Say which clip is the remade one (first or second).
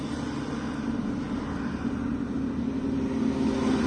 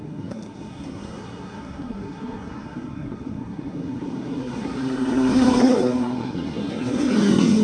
second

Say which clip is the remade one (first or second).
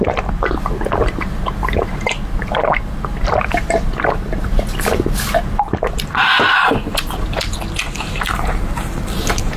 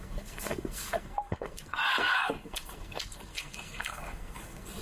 second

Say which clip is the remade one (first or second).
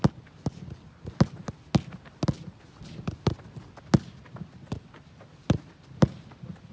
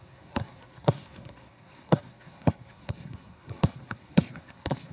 second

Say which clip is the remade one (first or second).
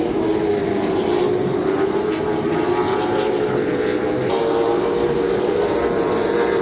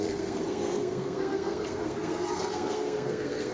second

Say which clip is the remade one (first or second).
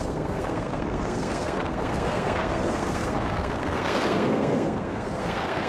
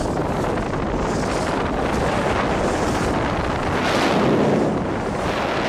first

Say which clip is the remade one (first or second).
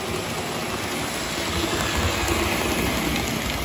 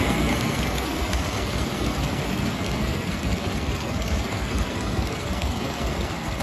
second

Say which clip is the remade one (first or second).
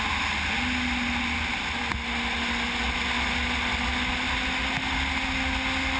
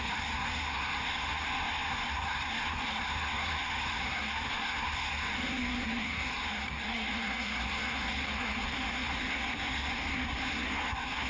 second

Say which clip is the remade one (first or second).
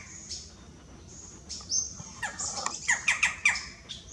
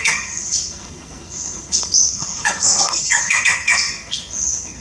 second